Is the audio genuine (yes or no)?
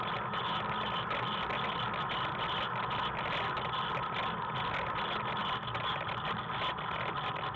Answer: yes